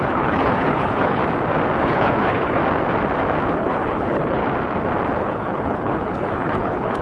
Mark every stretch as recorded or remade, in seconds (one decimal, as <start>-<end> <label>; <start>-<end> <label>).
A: 0.0-1.2 remade; 1.2-1.8 recorded; 1.8-2.6 remade; 2.6-3.5 recorded; 3.5-4.4 remade; 4.4-5.2 recorded; 5.2-7.0 remade